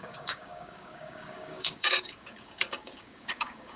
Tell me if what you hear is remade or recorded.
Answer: remade